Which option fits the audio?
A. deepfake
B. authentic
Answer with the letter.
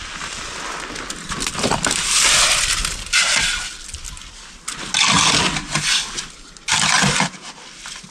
B